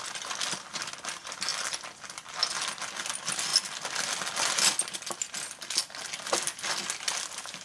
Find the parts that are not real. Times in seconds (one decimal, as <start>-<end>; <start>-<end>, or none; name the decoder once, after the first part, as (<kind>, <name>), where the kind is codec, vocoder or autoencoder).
none